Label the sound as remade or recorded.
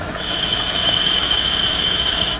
remade